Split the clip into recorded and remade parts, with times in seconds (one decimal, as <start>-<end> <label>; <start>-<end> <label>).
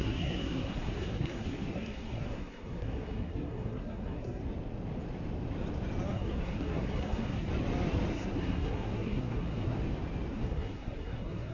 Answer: 0.0-4.4 remade; 4.4-6.1 recorded; 6.1-7.5 remade; 7.5-8.1 recorded; 8.1-9.8 remade; 9.8-10.3 recorded; 10.3-11.5 remade